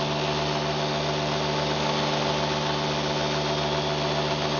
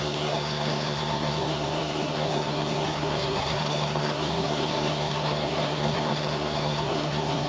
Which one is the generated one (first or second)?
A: second